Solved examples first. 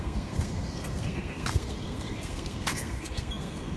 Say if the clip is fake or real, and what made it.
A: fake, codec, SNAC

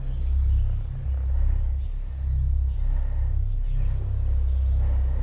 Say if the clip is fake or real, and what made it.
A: real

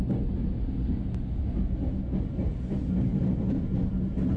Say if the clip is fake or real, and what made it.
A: real